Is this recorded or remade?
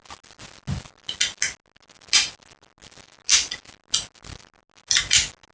recorded